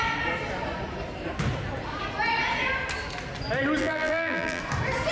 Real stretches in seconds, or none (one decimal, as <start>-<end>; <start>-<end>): 0.0-3.8; 4.6-5.1